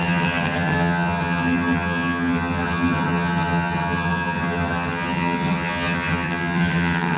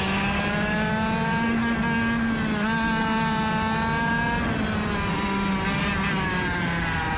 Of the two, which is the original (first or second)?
second